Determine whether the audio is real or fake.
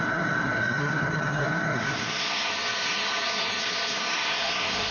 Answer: fake